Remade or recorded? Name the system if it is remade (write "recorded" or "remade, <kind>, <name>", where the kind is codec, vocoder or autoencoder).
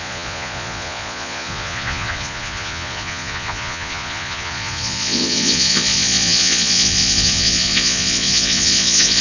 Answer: remade, vocoder, Vocos